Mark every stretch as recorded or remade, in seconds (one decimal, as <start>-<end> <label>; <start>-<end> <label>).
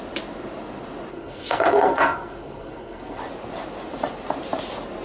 0.0-1.1 recorded; 1.1-3.2 remade; 3.2-5.0 recorded